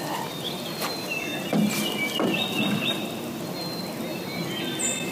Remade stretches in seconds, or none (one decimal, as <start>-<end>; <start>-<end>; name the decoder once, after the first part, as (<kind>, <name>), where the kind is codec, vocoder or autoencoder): none